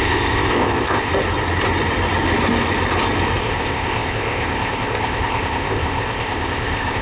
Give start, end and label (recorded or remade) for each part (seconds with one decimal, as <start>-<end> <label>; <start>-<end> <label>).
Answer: 0.0-1.1 remade; 1.1-3.4 recorded; 3.4-7.0 remade